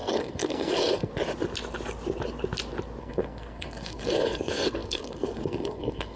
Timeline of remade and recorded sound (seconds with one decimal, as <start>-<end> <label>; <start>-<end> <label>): 0.0-1.1 remade; 1.1-3.0 recorded; 3.0-6.2 remade